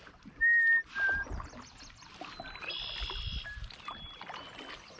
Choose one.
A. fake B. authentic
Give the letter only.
B